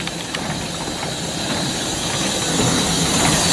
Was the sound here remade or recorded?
recorded